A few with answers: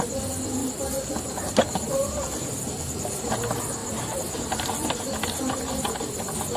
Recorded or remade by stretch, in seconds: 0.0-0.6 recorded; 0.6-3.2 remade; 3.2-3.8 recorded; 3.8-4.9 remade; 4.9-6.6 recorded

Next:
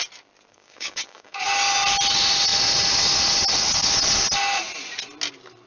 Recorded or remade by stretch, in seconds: 0.0-0.5 recorded; 0.5-1.4 remade; 1.4-5.7 recorded

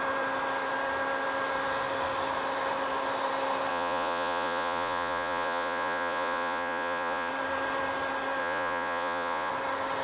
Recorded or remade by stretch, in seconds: 0.0-3.7 recorded; 3.7-7.3 remade; 7.3-8.4 recorded; 8.4-9.5 remade; 9.5-10.0 recorded

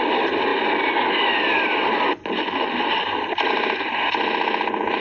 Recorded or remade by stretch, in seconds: 0.0-5.0 recorded

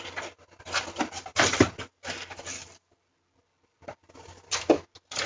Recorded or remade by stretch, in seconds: 0.0-5.3 recorded

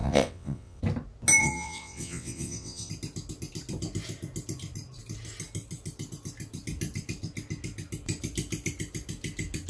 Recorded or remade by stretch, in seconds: 0.0-0.8 remade; 0.8-1.4 recorded; 1.4-2.9 remade; 2.9-9.7 recorded